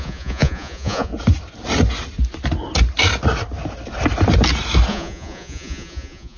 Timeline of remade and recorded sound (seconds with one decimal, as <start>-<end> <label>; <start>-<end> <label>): 0.0-1.1 remade; 1.1-4.9 recorded; 4.9-6.4 remade